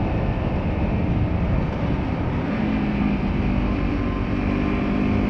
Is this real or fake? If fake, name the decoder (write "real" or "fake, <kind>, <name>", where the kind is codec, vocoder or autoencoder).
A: real